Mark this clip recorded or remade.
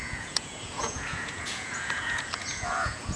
remade